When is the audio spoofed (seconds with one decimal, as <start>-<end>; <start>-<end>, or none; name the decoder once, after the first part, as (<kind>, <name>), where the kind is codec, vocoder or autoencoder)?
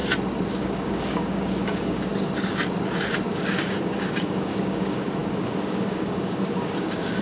0.5-2.1 (codec, DAC); 3.3-7.2